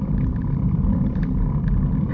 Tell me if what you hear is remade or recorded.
recorded